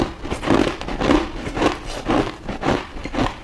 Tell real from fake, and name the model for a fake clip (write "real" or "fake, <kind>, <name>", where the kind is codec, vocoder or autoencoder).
real